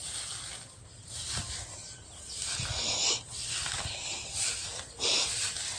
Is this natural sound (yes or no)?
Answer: yes